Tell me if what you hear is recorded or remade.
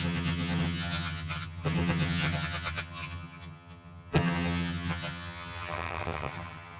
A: remade